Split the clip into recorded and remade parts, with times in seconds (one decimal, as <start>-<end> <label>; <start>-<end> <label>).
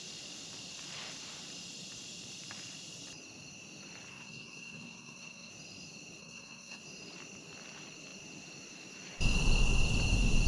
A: 0.0-4.1 recorded; 4.1-5.5 remade; 5.5-6.2 recorded; 6.2-6.8 remade; 6.8-10.5 recorded